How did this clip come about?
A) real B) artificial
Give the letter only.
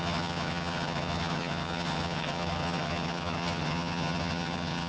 B